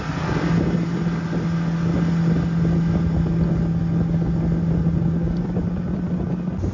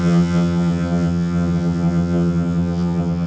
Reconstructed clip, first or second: second